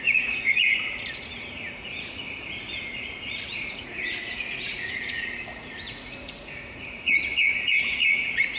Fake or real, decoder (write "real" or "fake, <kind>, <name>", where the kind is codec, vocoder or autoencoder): fake, vocoder, Vocos